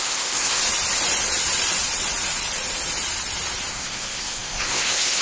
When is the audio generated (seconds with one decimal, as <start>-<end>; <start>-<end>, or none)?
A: 0.0-0.6; 3.7-5.2